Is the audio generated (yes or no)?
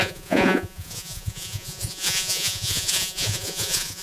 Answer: yes